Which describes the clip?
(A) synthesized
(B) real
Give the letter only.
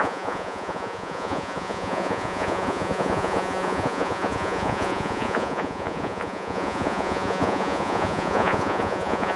A